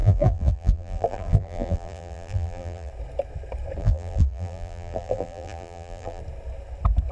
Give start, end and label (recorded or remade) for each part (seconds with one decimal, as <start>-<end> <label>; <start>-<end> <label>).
0.0-2.9 remade; 2.9-3.8 recorded; 3.8-6.2 remade; 6.2-7.1 recorded